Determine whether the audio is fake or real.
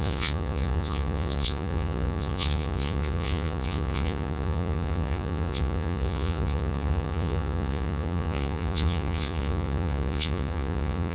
fake